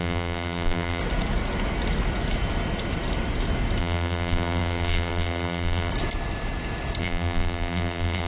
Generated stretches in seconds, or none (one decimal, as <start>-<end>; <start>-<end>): 0.0-1.0; 3.8-5.9; 7.0-8.3